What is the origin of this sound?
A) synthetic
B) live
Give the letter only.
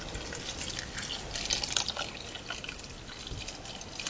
B